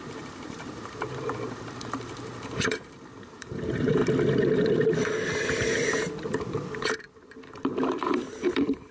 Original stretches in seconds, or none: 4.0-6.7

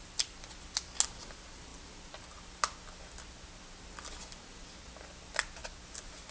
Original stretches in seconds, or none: 0.0-6.3

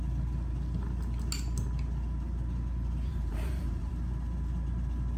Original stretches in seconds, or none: 0.0-3.1; 3.9-5.2

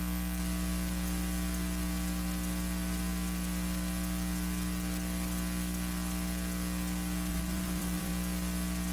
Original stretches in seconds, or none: 0.0-7.3; 8.1-8.9

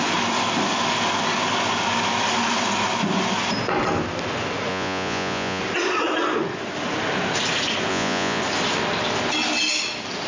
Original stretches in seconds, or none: 0.0-4.7; 5.6-7.9; 8.4-10.3

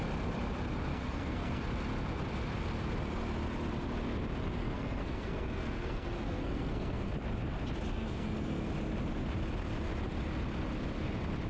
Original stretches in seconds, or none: 0.0-0.9; 1.6-4.6; 7.1-7.9; 8.7-11.5

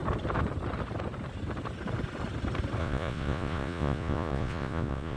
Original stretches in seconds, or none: 0.0-2.8

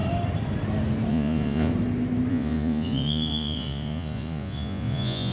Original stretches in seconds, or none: 0.0-1.1; 1.7-2.3